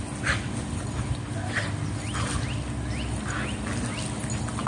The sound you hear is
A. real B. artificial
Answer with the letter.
A